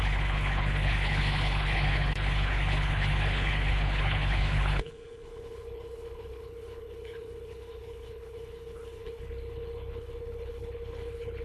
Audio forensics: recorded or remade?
remade